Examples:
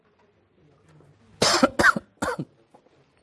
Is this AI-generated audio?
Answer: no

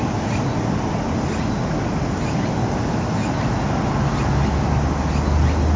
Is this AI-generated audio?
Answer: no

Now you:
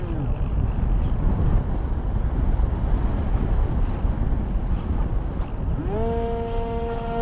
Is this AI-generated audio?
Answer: no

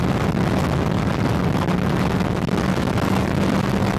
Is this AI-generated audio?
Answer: no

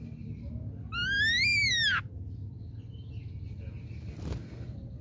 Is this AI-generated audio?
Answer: no